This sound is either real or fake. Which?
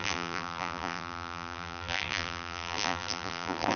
fake